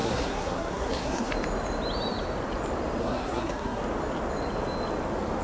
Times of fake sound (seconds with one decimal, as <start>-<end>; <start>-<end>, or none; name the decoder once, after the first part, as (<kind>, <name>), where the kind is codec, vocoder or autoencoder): 0.0-1.3 (codec, SNAC); 3.0-3.8